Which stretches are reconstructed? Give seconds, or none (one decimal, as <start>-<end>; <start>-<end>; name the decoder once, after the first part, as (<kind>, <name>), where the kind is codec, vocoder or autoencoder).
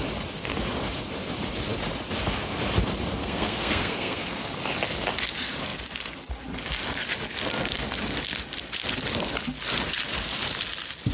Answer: 3.2-4.5 (codec, SNAC)